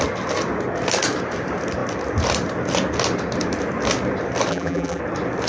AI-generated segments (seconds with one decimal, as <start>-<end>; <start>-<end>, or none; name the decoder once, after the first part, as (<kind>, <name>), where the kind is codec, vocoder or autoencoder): 4.5-5.0 (vocoder, BigVGAN v2)